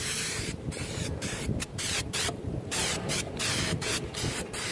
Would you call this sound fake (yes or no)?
yes